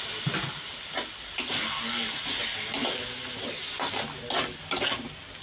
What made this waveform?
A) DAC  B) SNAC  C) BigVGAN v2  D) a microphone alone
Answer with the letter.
D